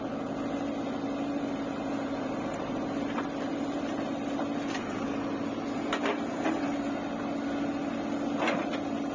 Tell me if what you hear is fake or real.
real